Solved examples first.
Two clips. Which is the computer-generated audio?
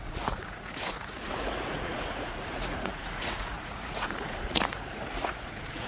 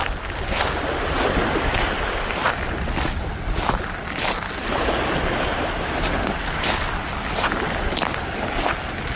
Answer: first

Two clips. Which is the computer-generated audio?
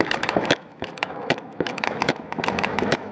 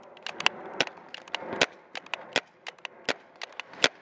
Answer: first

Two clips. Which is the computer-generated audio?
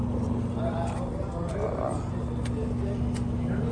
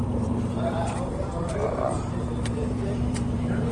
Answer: second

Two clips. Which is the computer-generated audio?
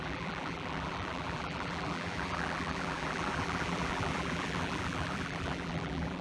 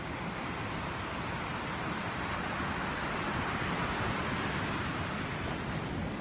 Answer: first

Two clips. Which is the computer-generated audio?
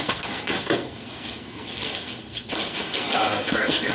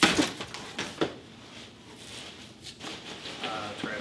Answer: first